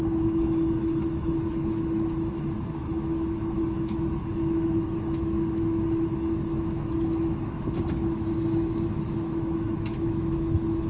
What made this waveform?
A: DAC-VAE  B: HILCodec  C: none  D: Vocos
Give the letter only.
A